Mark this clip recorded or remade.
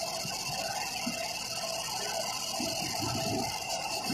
recorded